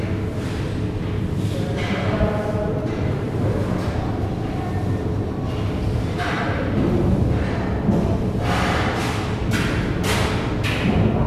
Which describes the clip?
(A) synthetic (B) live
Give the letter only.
B